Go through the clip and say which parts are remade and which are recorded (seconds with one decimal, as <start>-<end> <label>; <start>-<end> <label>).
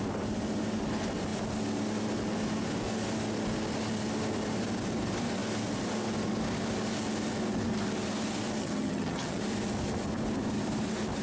0.0-8.6 recorded; 8.6-9.4 remade; 9.4-11.2 recorded